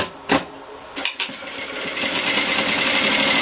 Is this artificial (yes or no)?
no